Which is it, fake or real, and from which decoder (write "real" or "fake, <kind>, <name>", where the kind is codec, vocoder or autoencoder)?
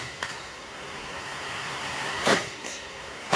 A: fake, codec, SNAC